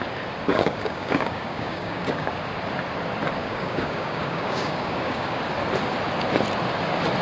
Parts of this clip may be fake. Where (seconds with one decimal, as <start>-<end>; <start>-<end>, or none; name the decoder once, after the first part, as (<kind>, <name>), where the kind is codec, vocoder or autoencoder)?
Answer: 0.5-2.3 (codec, DAC); 3.4-5.4